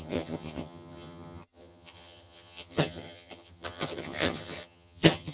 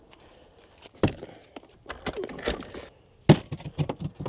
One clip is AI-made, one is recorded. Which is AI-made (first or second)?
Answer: first